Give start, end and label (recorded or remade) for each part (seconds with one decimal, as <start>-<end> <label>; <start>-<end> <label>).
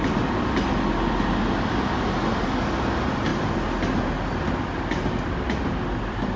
0.0-6.4 recorded